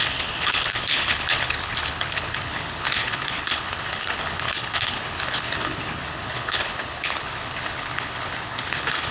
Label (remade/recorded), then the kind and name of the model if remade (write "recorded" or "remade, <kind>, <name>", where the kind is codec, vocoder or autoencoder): remade, codec, HILCodec